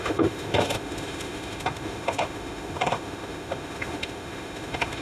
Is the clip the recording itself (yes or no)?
no